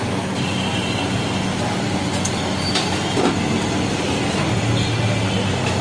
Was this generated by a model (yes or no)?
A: no